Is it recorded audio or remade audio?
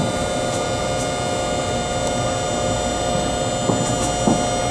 recorded